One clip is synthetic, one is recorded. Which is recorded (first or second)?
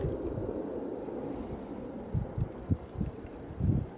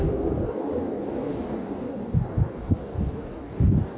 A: first